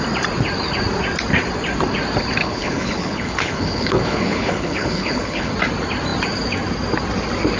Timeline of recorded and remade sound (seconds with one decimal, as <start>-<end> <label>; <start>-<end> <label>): 0.0-2.4 recorded; 2.4-5.5 remade; 5.5-7.6 recorded